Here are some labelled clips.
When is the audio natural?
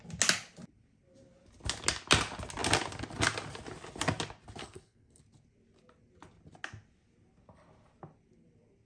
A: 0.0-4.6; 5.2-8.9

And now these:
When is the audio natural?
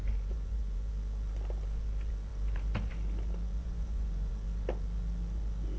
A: 0.9-3.6; 4.3-5.8